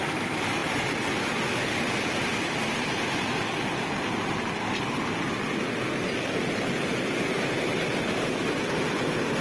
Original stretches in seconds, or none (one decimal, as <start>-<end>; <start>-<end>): 0.0-9.4